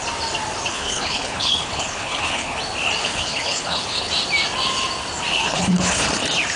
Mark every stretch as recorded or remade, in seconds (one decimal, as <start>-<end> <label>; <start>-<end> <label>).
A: 0.0-0.7 recorded; 0.7-2.6 remade; 2.6-3.0 recorded; 3.0-4.1 remade; 4.1-5.3 recorded; 5.3-6.1 remade; 6.1-6.6 recorded